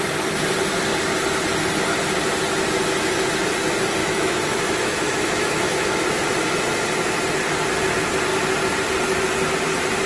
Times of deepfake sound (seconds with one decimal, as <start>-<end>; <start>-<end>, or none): 4.0-6.0